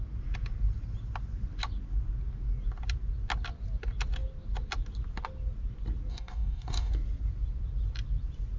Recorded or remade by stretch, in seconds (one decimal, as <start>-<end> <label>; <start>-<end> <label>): 0.0-6.1 recorded; 6.1-6.9 remade; 6.9-8.6 recorded